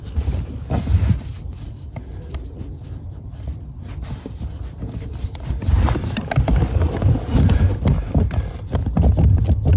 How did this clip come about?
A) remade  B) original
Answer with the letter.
B